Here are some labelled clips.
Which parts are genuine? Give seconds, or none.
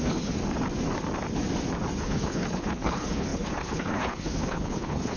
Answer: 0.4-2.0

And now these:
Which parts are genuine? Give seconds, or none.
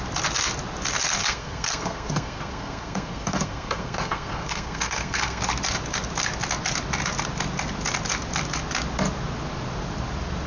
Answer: 0.0-1.2; 5.4-10.5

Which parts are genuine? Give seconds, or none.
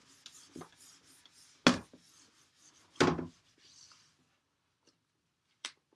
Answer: 0.0-3.5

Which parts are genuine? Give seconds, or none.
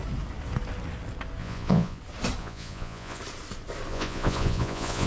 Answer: 0.0-1.4; 2.0-2.4; 3.2-3.9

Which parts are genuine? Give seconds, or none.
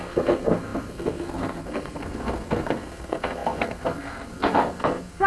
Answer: none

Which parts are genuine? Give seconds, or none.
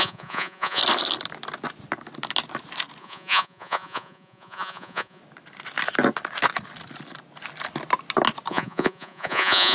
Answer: 0.8-3.0; 5.2-8.5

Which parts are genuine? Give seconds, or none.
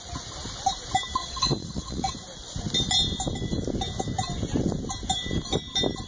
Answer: 0.0-1.2; 2.1-6.1